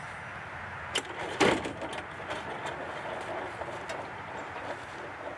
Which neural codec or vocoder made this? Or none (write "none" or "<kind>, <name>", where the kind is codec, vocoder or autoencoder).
none